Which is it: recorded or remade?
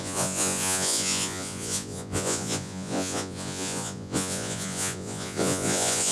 remade